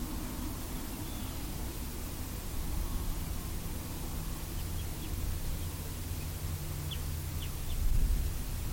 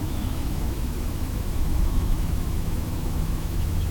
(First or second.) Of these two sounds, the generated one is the second